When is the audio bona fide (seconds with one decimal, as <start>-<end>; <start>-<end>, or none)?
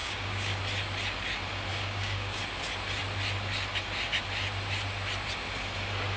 0.6-1.7; 2.4-6.2